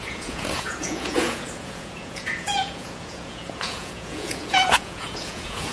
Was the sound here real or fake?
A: fake